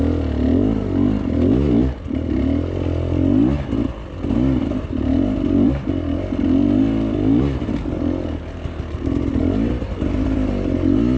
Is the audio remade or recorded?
recorded